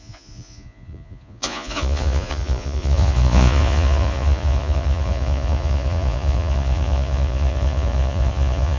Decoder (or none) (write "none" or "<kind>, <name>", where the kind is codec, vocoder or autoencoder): vocoder, Vocos